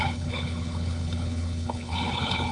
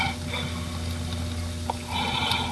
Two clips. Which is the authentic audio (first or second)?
second